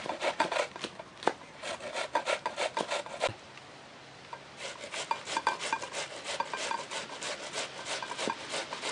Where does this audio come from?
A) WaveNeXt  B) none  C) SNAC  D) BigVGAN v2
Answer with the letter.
B